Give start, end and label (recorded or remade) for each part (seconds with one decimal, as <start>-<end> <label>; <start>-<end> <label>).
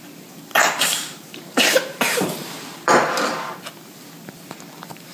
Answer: 0.0-0.5 recorded; 0.5-3.6 remade; 3.6-5.1 recorded